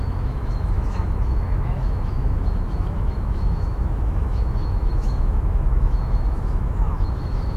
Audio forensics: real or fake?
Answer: fake